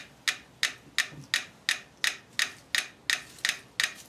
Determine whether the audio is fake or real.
real